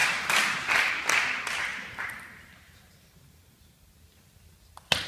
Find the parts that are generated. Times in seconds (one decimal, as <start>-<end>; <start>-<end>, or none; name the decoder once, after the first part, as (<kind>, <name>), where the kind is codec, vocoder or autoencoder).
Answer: 1.7-3.9 (vocoder, BigVGAN v2)